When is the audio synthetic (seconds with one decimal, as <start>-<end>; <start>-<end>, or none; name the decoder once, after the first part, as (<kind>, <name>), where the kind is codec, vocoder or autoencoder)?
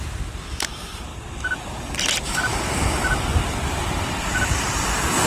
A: none